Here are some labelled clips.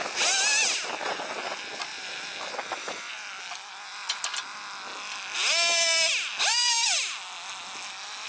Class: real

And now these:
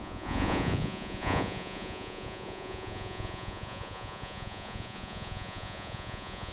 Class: fake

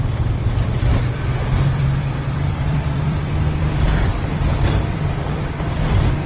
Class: fake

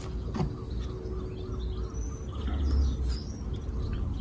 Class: real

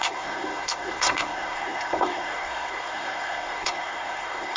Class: fake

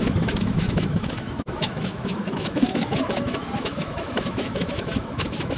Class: fake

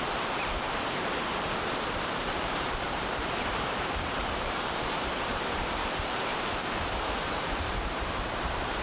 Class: fake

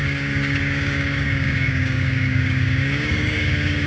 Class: fake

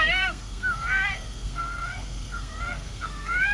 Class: fake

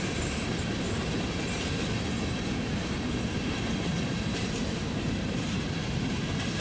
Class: fake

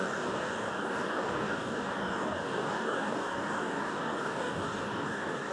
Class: fake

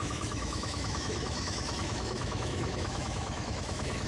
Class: fake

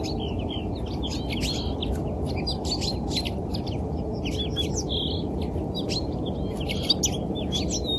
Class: real